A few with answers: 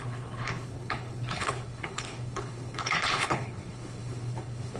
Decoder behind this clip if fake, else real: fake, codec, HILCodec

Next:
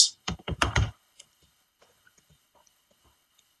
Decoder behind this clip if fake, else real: fake, codec, HILCodec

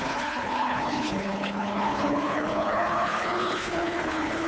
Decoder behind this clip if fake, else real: fake, codec, HILCodec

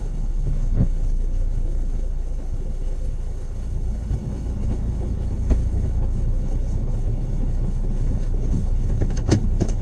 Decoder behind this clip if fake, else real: fake, codec, HILCodec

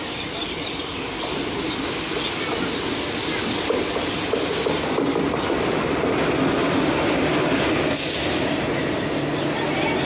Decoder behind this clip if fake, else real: real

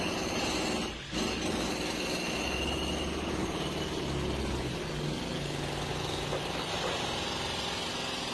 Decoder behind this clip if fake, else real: real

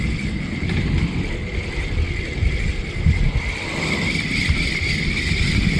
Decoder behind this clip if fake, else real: real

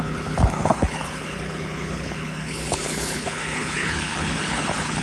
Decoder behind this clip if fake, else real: fake, codec, HILCodec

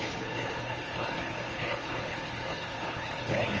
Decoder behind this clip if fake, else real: fake, codec, HILCodec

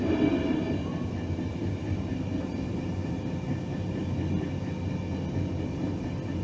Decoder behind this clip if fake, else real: real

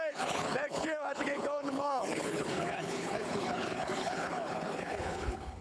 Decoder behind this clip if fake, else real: fake, codec, HILCodec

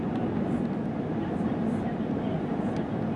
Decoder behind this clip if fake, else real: real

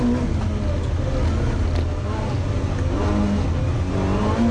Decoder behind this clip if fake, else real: real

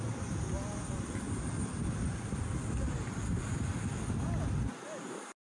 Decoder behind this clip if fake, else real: real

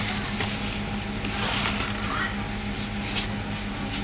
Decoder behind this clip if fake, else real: real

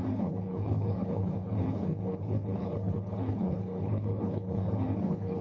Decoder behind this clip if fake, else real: fake, codec, HILCodec